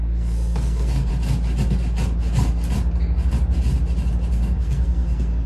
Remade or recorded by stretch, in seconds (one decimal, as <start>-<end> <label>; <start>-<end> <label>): 0.0-1.1 remade; 1.1-4.3 recorded; 4.3-5.5 remade